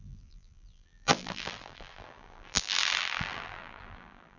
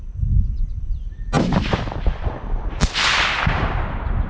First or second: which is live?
second